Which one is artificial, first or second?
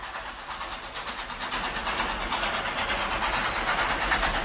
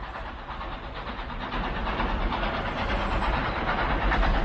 second